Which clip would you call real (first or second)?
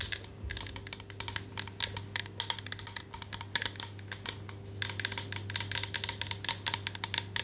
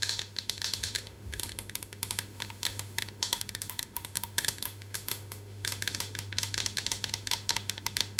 first